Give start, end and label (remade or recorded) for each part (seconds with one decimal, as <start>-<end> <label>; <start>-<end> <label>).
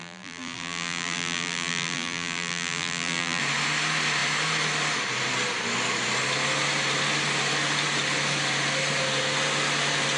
0.0-3.4 remade; 3.4-10.2 recorded